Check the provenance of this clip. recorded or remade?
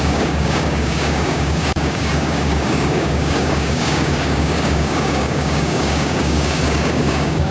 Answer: remade